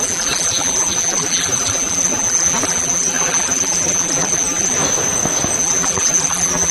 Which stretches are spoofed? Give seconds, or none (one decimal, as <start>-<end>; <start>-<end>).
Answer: 0.0-4.8; 5.6-6.7